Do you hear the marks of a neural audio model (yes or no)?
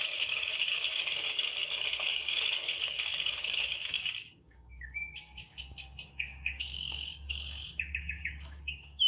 yes